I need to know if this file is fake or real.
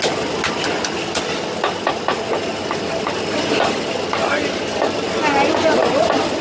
real